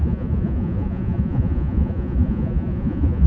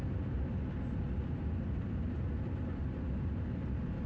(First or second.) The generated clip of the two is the first